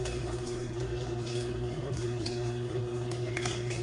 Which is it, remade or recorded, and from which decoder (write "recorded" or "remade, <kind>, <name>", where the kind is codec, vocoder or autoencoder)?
remade, codec, SNAC